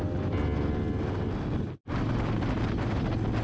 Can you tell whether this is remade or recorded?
recorded